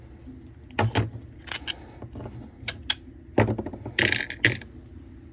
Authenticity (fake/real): real